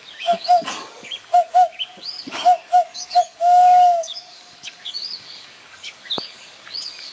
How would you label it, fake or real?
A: fake